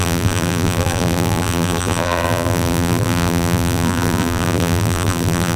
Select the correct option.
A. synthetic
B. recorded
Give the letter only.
A